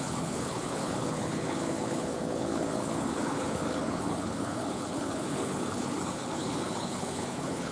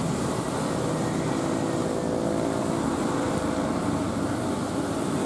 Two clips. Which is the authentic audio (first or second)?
second